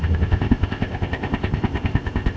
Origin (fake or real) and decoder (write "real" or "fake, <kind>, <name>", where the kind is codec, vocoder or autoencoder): fake, codec, ZipCodec